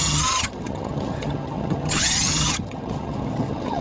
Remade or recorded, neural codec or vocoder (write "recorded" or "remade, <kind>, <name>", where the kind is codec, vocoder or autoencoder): remade, vocoder, HiFi-GAN